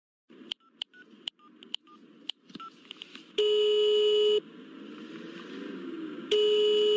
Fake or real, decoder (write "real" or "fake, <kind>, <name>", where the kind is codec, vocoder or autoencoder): real